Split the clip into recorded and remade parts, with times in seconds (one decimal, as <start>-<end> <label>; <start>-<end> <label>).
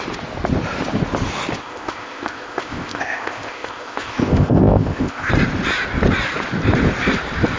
0.0-1.6 recorded; 1.6-5.3 remade; 5.3-7.6 recorded